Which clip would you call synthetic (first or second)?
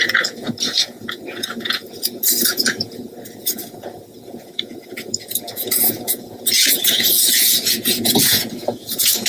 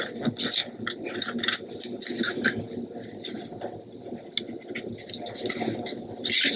first